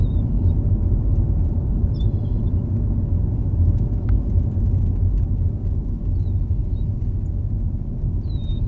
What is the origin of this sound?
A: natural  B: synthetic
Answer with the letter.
A